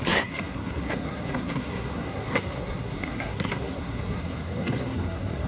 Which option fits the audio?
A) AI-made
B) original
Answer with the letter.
A